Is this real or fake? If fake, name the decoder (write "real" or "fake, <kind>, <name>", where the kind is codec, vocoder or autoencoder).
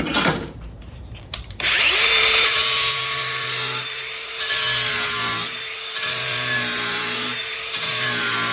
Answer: fake, vocoder, BigVGAN v2